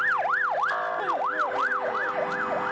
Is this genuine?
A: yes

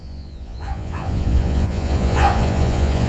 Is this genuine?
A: no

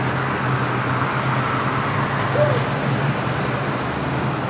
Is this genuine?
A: yes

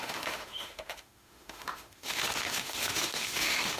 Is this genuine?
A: no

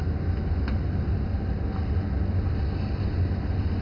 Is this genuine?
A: yes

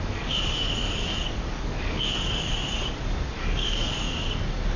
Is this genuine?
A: no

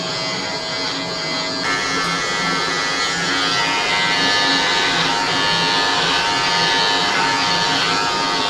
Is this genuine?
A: yes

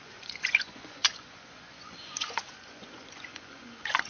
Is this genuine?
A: no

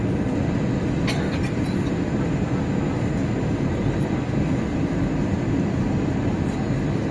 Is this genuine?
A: yes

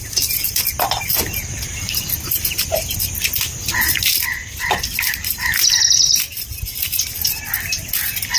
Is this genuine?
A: yes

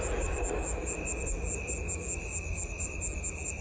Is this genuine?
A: yes